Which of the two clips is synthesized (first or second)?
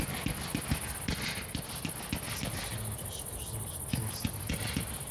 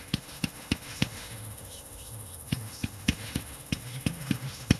second